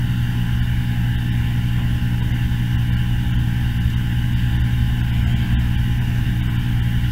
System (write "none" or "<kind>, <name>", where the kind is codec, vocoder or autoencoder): none